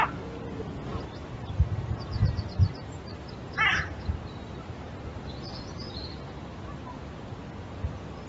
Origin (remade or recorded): recorded